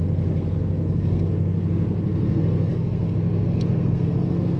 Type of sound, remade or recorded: remade